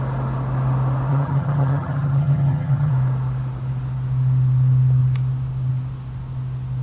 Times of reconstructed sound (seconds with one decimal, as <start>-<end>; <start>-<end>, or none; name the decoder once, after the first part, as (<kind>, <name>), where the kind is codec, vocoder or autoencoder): 1.1-2.9 (vocoder, HiFi-GAN)